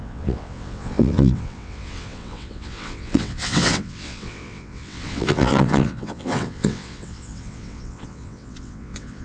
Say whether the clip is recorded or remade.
remade